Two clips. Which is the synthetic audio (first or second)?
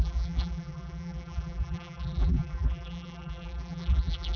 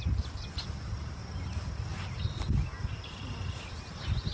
first